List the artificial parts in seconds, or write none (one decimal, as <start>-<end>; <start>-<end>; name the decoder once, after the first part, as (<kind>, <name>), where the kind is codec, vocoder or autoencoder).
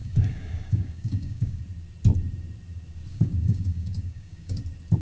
0.0-1.6 (codec, DAC); 3.1-4.6